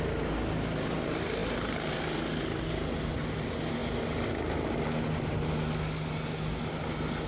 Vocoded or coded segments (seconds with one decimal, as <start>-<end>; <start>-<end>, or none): none

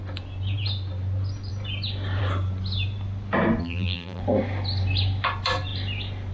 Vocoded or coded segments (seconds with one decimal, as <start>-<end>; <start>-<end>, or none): 3.6-4.2

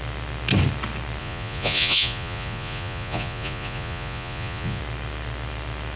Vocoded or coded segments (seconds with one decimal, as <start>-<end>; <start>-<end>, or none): 1.2-4.8

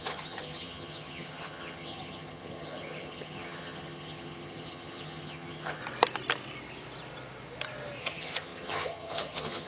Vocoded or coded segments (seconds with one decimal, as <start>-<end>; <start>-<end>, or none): 0.0-5.8; 8.0-9.7

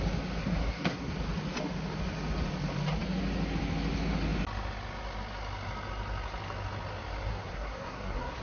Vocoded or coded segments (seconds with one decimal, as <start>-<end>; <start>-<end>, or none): 0.4-1.1; 7.3-8.4

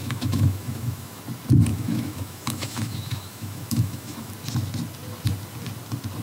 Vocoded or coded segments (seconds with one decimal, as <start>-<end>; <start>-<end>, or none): 0.0-1.2; 1.7-4.3

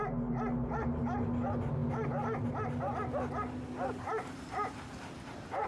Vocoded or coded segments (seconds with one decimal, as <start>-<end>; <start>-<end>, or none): none